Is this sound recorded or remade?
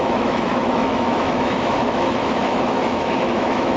remade